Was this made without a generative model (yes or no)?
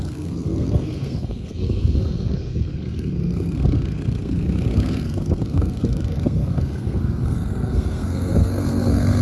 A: no